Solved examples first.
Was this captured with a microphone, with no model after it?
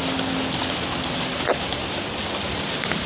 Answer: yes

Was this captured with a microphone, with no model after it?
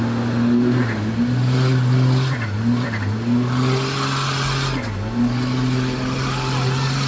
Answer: yes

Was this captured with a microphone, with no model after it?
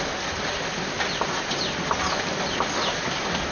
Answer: yes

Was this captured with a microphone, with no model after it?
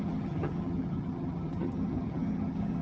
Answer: no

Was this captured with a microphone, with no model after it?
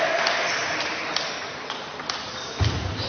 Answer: yes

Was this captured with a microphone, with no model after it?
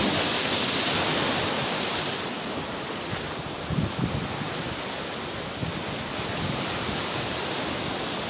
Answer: yes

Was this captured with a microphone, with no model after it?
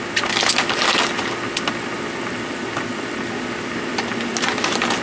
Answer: yes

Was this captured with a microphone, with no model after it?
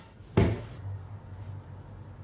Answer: yes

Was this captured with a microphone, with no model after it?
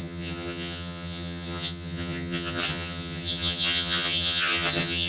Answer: no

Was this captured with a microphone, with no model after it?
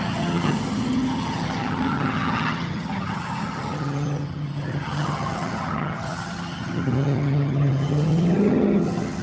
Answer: no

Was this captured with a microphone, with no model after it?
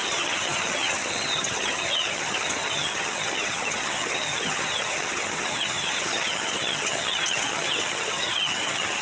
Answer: no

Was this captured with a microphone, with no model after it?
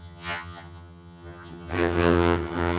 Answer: no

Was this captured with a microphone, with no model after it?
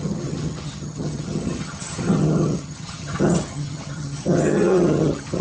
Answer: no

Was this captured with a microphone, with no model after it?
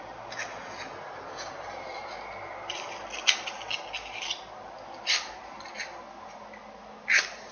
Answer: yes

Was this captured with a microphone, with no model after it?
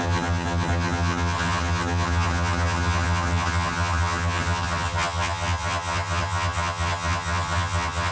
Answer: no